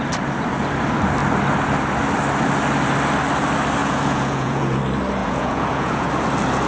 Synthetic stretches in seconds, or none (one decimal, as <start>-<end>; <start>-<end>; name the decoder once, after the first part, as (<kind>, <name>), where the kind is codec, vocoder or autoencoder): 3.8-4.8 (vocoder, Vocos); 5.2-6.1